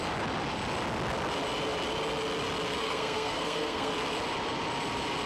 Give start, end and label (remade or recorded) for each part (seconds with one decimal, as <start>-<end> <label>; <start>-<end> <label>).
0.0-2.8 recorded; 2.8-3.9 remade; 3.9-5.3 recorded